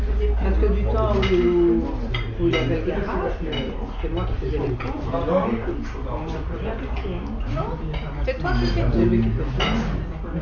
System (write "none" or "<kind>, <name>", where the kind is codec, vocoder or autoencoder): none